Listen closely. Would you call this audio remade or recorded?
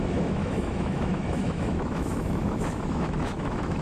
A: remade